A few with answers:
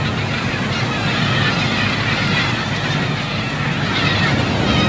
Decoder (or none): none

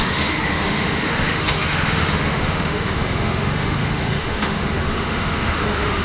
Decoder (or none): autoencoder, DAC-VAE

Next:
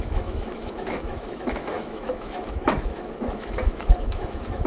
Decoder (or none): autoencoder, DAC-VAE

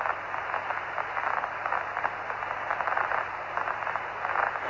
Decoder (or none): none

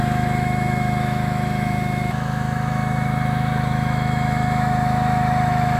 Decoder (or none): autoencoder, DAC-VAE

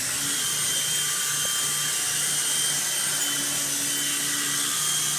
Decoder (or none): none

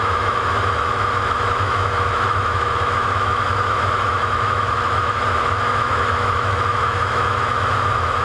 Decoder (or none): autoencoder, DAC-VAE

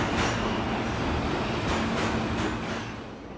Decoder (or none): none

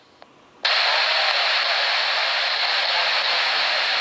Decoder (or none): none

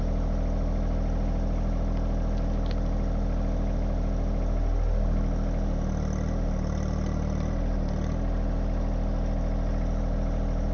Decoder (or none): none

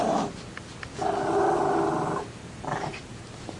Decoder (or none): none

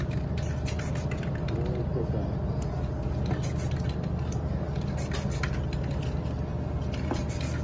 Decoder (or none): none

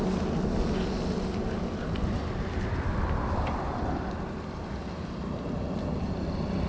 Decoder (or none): none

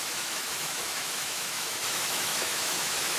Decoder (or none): autoencoder, DAC-VAE